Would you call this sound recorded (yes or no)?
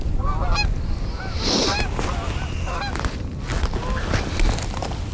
yes